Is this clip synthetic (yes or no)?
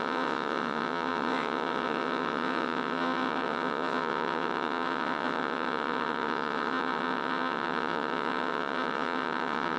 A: yes